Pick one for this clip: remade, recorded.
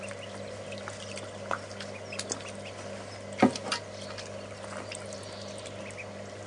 recorded